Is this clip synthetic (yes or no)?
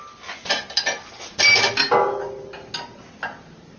no